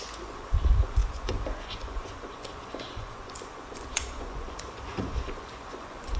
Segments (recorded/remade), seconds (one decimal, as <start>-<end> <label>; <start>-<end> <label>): 0.0-6.2 remade